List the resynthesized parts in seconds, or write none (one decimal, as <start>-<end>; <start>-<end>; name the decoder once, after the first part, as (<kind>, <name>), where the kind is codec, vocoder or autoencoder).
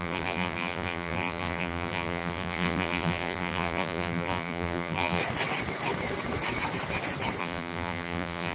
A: 0.0-5.2 (vocoder, BigVGAN v2); 7.4-8.5